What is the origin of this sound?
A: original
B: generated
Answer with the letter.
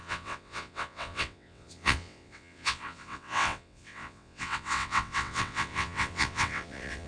B